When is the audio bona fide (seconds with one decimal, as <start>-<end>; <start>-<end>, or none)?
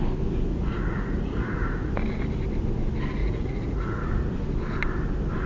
0.0-0.5; 1.9-3.2; 4.0-5.5